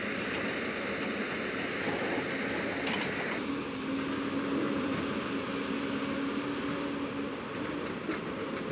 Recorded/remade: recorded